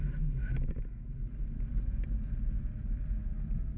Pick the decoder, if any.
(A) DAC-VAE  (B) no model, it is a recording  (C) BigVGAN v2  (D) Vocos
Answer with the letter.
B